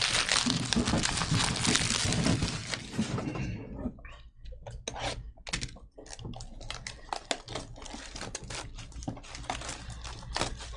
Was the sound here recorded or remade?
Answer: recorded